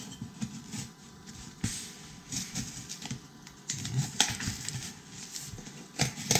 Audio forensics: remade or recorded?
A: remade